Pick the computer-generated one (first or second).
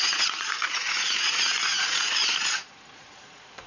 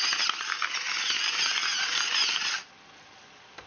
first